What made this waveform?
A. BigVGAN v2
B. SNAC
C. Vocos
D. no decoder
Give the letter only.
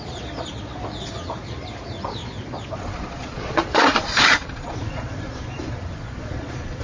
C